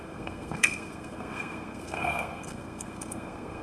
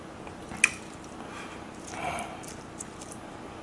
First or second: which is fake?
first